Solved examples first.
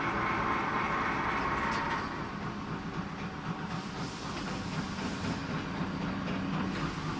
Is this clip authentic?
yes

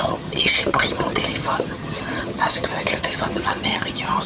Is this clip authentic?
no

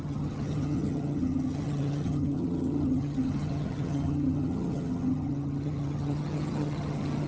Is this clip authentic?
no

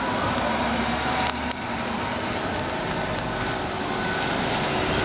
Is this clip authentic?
yes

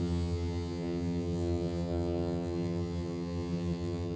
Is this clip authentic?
no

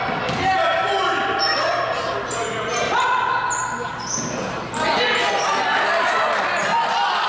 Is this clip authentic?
yes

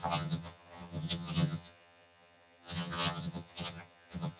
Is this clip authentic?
no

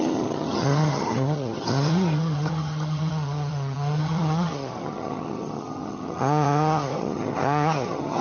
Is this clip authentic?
no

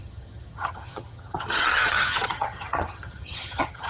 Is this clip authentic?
no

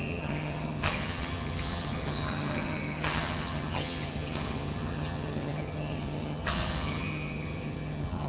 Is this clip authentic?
no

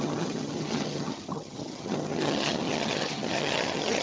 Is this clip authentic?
no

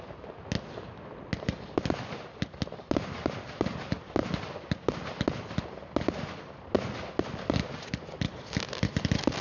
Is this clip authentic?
yes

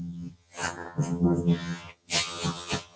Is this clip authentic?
no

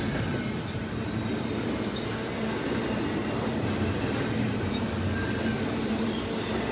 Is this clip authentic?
yes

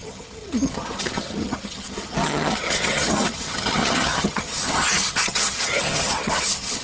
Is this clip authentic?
no